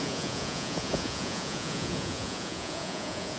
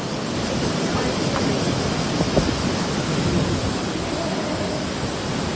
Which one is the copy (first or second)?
first